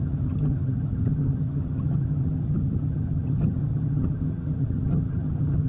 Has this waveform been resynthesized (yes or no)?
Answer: yes